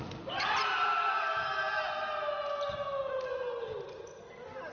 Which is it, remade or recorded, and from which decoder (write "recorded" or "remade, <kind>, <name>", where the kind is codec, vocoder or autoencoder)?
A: recorded